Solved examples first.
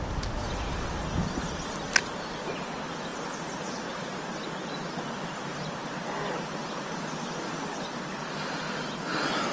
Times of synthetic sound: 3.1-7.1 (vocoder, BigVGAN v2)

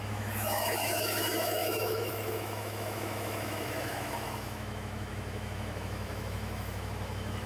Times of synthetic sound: 0.0-7.5 (autoencoder, DAC-VAE)